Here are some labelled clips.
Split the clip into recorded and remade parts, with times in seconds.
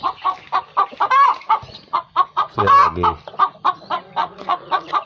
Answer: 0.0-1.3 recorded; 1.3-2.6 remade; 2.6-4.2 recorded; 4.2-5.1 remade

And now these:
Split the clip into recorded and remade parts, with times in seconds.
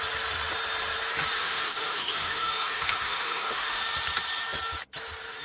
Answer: 0.0-1.4 recorded; 1.4-3.8 remade; 3.8-5.4 recorded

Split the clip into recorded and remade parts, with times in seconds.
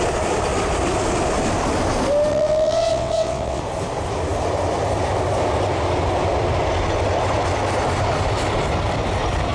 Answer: 0.0-2.3 recorded; 2.3-3.6 remade; 3.6-9.5 recorded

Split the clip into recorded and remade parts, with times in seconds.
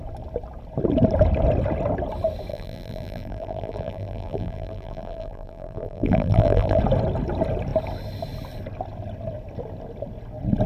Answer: 0.0-2.5 recorded; 2.5-6.8 remade; 6.8-10.7 recorded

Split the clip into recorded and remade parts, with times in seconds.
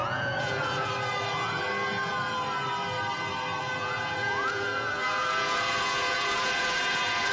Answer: 0.0-0.9 remade; 0.9-3.6 recorded; 3.6-7.3 remade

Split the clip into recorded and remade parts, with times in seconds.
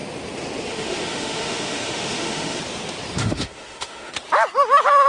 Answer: 0.0-0.7 recorded; 0.7-2.6 remade; 2.6-3.2 recorded; 3.2-4.1 remade; 4.1-5.1 recorded